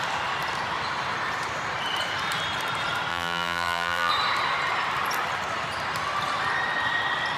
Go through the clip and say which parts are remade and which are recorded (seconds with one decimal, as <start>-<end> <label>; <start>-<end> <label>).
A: 0.0-3.1 recorded; 3.1-4.1 remade; 4.1-7.4 recorded